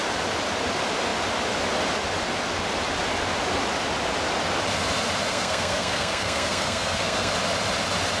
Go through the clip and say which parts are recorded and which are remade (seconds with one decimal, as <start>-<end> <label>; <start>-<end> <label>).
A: 0.0-5.3 recorded; 5.3-7.3 remade; 7.3-8.2 recorded